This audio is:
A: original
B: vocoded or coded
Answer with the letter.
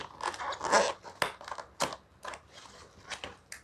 A